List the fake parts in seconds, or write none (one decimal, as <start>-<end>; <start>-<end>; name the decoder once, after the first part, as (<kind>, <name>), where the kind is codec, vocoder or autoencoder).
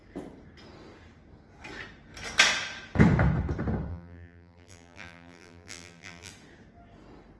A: 3.9-6.3 (vocoder, BigVGAN v2)